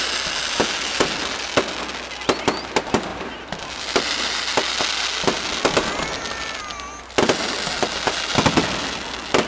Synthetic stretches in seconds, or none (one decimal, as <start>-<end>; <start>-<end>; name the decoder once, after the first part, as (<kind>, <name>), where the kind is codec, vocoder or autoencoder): none

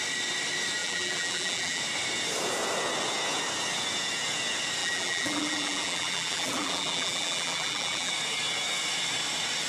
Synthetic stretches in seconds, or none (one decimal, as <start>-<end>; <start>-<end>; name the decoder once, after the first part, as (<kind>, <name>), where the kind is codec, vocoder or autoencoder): 0.8-1.8 (vocoder, BigVGAN v2); 4.8-8.1

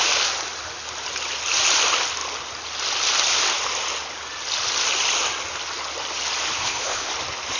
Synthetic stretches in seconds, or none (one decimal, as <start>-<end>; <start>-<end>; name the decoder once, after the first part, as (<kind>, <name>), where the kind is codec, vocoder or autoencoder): 6.6-7.1 (codec, ZipCodec)